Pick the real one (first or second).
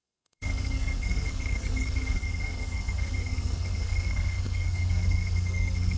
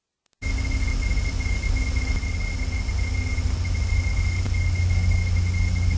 second